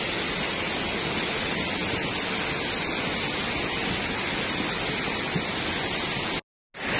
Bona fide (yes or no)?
yes